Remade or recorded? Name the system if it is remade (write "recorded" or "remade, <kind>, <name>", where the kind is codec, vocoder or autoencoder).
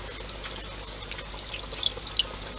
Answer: recorded